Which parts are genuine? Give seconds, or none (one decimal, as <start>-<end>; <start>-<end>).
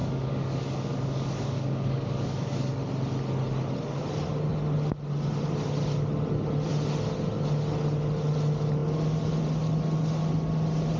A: 2.7-11.0